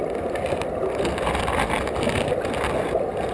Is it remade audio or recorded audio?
recorded